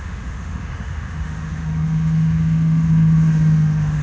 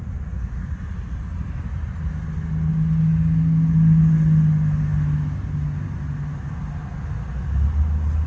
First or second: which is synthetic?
first